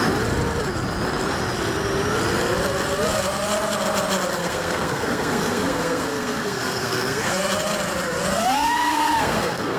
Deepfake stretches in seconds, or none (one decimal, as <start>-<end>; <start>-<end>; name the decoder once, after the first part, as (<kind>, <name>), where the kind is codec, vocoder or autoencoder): 4.4-7.4 (codec, SNAC); 8.3-9.8